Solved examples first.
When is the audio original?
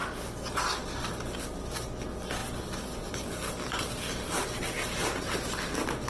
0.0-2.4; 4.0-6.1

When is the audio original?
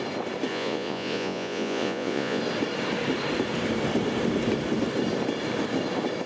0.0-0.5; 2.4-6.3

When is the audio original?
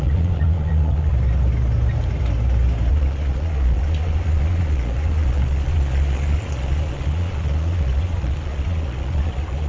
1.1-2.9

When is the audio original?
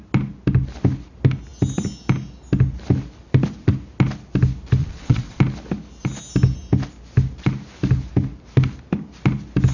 0.0-4.8; 5.4-9.7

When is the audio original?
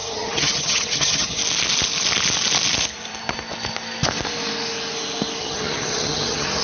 1.4-5.4